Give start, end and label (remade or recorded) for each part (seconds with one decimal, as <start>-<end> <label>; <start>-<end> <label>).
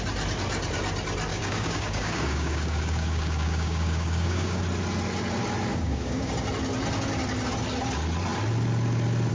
0.0-1.3 recorded; 1.3-4.6 remade; 4.6-5.7 recorded; 5.7-6.3 remade; 6.3-9.3 recorded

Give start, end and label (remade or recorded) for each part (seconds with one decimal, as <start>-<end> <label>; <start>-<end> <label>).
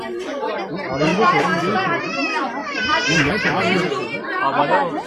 0.0-5.1 recorded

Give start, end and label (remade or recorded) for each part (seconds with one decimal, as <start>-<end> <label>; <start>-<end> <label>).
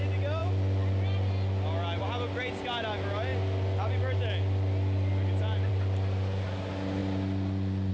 0.0-7.9 recorded